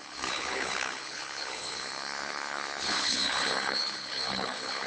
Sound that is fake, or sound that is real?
fake